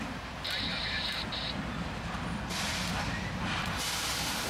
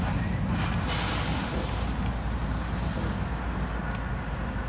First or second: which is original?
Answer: second